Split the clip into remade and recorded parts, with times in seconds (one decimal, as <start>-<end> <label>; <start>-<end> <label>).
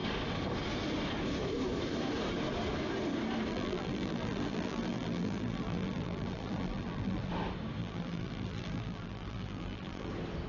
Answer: 0.0-3.5 recorded; 3.5-7.3 remade; 7.3-7.8 recorded; 7.8-10.1 remade; 10.1-10.5 recorded